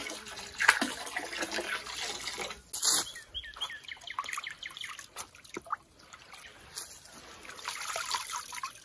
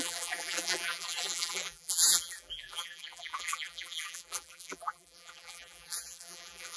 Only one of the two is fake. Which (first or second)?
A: second